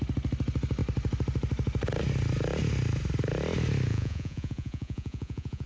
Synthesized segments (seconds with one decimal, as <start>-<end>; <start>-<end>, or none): 3.9-5.7